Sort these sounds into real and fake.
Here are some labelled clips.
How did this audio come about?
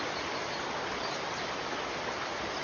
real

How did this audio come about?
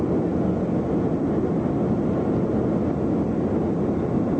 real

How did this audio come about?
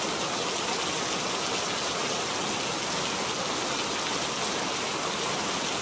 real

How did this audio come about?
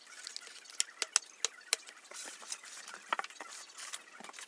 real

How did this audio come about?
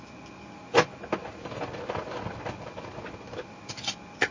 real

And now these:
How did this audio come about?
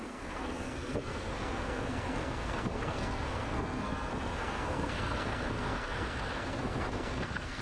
fake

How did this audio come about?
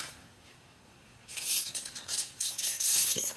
fake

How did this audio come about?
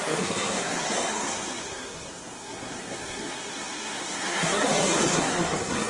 fake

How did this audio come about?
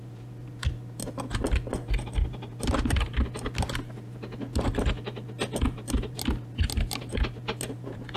real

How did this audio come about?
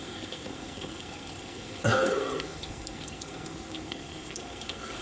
fake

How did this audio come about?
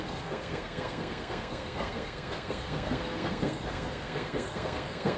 fake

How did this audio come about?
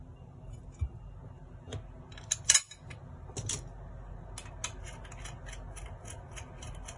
real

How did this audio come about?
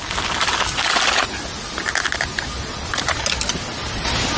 real